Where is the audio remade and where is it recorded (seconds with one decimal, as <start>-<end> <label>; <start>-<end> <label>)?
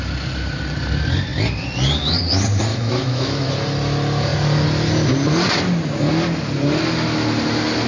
0.0-2.7 recorded; 2.7-3.5 remade; 3.5-7.9 recorded